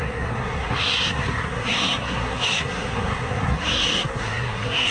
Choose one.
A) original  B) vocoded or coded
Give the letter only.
B